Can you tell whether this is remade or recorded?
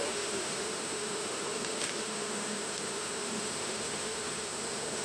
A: remade